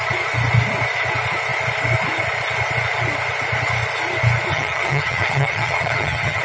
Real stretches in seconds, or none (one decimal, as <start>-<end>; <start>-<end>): 0.0-4.5